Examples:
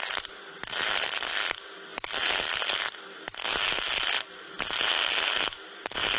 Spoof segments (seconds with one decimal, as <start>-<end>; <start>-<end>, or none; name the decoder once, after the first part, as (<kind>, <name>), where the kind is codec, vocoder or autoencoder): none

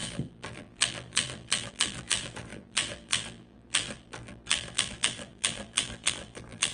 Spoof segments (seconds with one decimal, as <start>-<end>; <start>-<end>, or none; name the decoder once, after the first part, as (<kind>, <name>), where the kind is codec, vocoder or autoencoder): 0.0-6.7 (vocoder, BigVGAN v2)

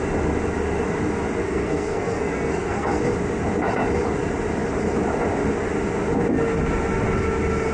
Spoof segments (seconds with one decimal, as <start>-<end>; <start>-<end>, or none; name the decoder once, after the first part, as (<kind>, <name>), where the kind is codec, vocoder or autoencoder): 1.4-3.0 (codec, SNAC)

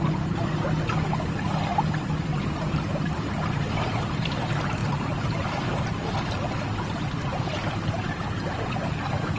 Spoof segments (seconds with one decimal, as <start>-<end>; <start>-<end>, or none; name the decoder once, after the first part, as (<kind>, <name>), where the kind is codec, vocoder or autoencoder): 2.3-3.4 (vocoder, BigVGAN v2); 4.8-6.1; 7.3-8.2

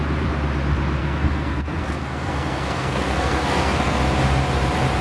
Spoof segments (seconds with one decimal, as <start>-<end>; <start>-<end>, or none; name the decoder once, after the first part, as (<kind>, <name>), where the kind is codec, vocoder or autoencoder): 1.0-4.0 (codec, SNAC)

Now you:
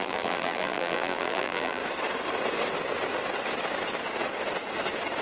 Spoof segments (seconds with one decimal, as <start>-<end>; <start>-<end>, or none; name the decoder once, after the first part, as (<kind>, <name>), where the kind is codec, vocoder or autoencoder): 0.0-1.8 (vocoder, BigVGAN v2)